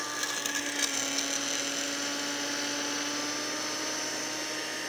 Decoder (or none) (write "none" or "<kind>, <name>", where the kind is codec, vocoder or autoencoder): none